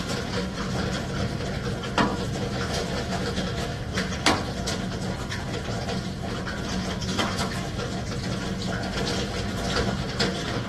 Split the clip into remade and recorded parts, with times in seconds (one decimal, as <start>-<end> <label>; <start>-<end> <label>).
0.0-2.1 recorded; 2.1-3.8 remade; 3.8-7.0 recorded; 7.0-7.8 remade; 7.8-10.7 recorded